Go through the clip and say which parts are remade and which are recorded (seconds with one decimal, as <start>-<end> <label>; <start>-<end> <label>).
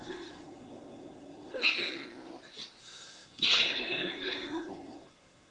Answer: 0.0-1.6 remade; 1.6-2.8 recorded; 2.8-5.5 remade